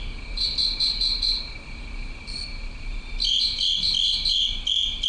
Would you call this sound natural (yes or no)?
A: no